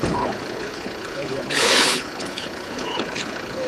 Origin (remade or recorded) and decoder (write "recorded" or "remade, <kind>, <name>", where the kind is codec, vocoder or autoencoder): remade, codec, HILCodec